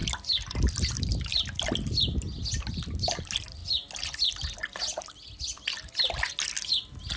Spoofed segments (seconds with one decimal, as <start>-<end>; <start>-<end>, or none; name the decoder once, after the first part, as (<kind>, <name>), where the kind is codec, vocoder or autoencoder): 0.9-1.3 (vocoder, BigVGAN v2); 2.7-3.6